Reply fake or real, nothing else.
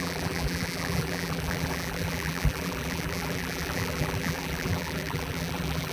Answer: fake